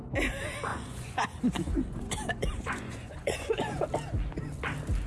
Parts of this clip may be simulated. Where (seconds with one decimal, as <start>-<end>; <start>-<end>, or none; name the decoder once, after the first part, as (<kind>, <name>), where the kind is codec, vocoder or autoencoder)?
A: 0.7-3.8 (vocoder, Vocos)

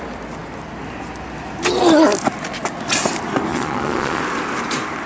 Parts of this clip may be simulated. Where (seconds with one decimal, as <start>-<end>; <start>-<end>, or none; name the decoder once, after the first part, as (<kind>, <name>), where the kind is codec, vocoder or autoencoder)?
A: 3.5-4.2 (vocoder, Vocos)

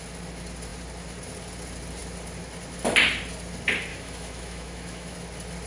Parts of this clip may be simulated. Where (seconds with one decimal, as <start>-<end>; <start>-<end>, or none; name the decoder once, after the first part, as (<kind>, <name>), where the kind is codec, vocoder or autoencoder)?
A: 3.9-5.1 (autoencoder, DAC-VAE)